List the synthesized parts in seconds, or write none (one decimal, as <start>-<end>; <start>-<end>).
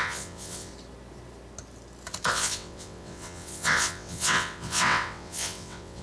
0.0-0.7; 2.3-6.0